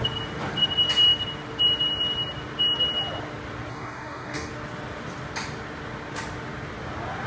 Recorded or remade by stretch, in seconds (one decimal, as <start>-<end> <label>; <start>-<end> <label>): 0.0-3.7 recorded; 3.7-4.5 remade; 4.5-7.3 recorded

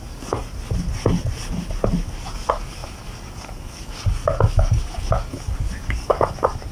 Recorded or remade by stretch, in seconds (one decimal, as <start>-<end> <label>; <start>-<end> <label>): 0.0-0.4 remade; 0.4-2.0 recorded; 2.0-6.7 remade

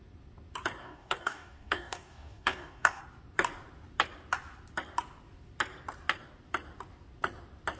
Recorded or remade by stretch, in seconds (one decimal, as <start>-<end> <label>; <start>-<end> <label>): 0.0-0.8 recorded; 0.8-3.0 remade; 3.0-7.8 recorded

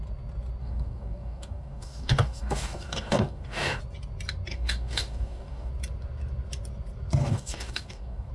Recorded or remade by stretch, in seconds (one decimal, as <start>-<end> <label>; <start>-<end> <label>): 0.0-0.6 recorded; 0.6-3.8 remade; 3.8-4.5 recorded; 4.5-5.7 remade; 5.7-7.2 recorded; 7.2-8.3 remade

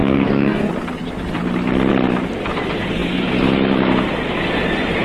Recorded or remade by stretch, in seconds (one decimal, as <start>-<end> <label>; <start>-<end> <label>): 0.0-0.7 remade; 0.7-5.0 recorded